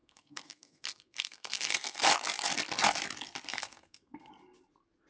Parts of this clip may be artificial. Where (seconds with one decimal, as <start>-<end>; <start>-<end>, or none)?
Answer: 0.0-2.0; 3.5-4.3